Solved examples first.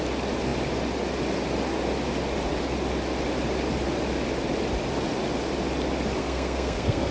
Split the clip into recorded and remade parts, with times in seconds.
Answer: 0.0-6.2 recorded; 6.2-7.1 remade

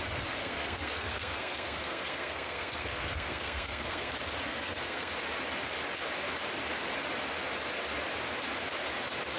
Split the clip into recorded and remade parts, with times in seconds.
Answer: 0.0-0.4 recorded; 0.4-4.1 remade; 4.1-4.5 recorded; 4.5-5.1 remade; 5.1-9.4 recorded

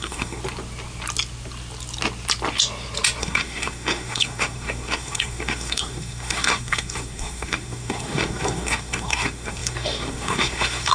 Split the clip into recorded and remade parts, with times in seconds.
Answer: 0.0-0.4 remade; 0.4-3.2 recorded; 3.2-10.9 remade

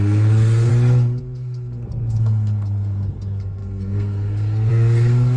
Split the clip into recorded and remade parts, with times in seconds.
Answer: 0.0-0.7 remade; 0.7-1.2 recorded; 1.2-5.4 remade

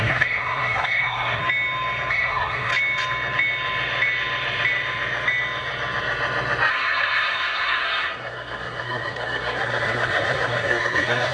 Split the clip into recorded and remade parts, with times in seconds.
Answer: 0.0-1.4 remade; 1.4-2.1 recorded; 2.1-2.7 remade; 2.7-6.7 recorded; 6.7-11.3 remade

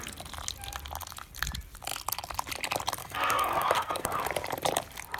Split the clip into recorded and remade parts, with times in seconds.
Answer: 0.0-3.0 recorded; 3.0-4.2 remade; 4.2-5.2 recorded

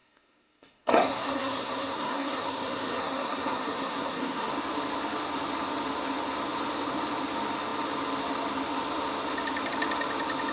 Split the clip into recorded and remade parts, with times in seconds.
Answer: 0.0-4.5 remade; 4.5-10.5 recorded

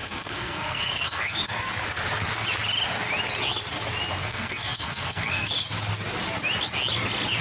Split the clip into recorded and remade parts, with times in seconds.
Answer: 0.0-1.7 remade; 1.7-4.2 recorded; 4.2-5.5 remade; 5.5-7.4 recorded